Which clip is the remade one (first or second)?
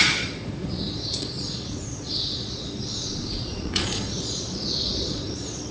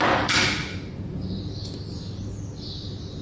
first